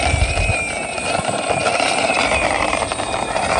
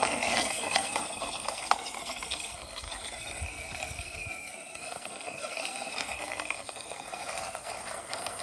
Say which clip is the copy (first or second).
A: second